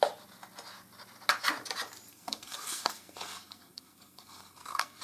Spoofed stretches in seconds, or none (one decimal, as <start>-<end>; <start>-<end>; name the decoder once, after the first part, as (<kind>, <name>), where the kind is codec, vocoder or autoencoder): 2.1-5.0 (codec, SNAC)